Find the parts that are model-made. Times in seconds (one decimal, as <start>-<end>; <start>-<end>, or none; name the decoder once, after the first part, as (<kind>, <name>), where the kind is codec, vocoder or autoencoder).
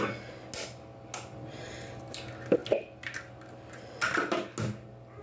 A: none